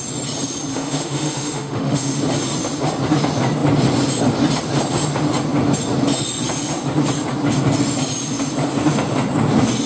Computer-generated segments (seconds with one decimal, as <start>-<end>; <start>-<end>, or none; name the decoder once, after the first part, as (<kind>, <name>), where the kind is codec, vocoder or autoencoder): 0.7-2.2 (autoencoder, DAC-VAE)